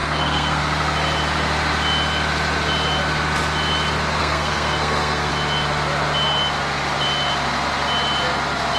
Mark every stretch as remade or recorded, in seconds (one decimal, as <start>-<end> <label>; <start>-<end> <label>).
0.0-0.6 remade; 0.6-4.2 recorded; 4.2-5.3 remade; 5.3-8.8 recorded